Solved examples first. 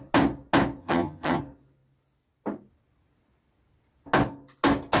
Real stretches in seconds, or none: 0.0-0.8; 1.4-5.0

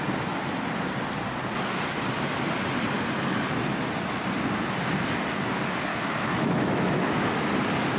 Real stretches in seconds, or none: 0.0-5.9; 7.3-8.0

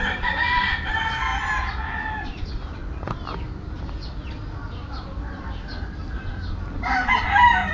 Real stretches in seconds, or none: 1.3-1.9; 2.8-6.2